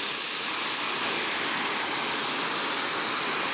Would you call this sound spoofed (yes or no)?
no